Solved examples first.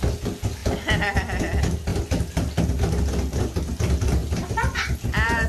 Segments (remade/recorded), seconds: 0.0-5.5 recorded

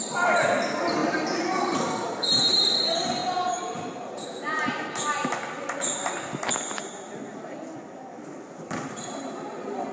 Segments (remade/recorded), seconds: 0.0-3.2 remade; 3.2-8.5 recorded; 8.5-9.9 remade

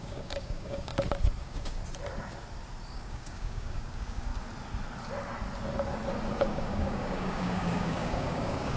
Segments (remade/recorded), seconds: 0.0-0.9 remade; 0.9-1.4 recorded; 1.4-1.8 remade; 1.8-2.9 recorded; 2.9-4.3 remade; 4.3-6.4 recorded; 6.4-8.8 remade

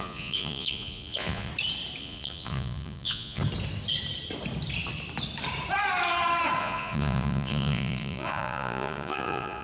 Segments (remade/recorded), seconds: 0.0-1.5 remade; 1.5-2.0 recorded; 2.0-3.4 remade; 3.4-6.6 recorded; 6.6-9.6 remade